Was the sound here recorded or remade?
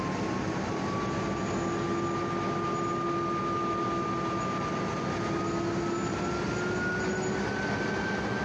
recorded